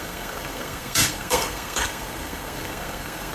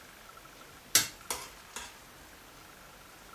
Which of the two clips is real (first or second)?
second